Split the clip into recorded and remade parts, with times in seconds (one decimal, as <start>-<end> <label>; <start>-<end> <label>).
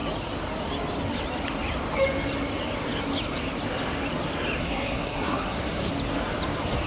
0.0-4.6 recorded; 4.6-5.9 remade; 5.9-6.9 recorded